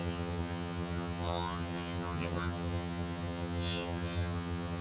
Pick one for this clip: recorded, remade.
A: remade